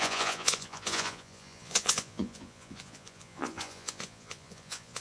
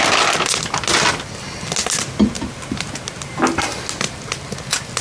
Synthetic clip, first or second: first